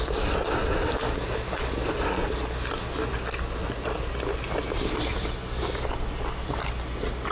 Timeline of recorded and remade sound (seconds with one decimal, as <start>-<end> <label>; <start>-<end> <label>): 0.0-7.3 recorded